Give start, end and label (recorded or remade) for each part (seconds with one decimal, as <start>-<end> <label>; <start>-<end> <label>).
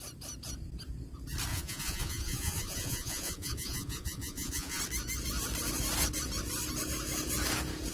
0.0-1.5 recorded; 1.5-4.8 remade; 4.8-7.9 recorded